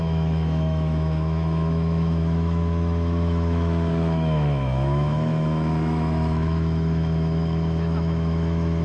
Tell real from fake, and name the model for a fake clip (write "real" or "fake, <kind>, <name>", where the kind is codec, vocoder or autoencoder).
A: fake, autoencoder, DAC-VAE